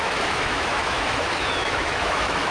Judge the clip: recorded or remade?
remade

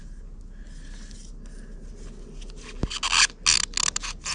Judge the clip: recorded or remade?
recorded